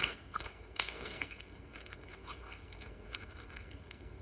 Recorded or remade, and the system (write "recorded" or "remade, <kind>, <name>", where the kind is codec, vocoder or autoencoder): remade, codec, SNAC